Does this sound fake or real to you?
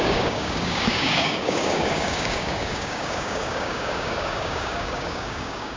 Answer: fake